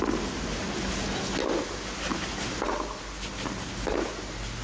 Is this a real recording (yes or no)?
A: yes